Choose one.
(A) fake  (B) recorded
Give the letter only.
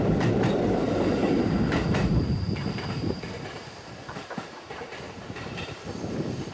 A